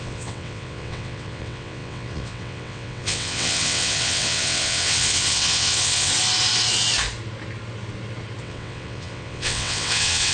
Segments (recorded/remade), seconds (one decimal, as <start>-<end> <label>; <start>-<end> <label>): 0.0-6.1 remade; 6.1-8.4 recorded; 8.4-10.3 remade